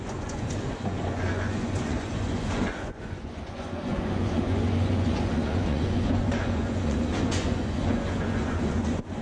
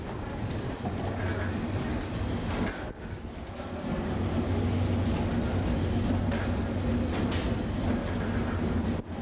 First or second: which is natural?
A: second